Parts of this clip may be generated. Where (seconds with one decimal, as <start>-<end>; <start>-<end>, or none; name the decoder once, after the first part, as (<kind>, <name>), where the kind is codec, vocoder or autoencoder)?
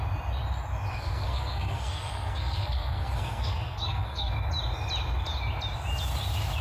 0.9-4.3 (codec, SNAC)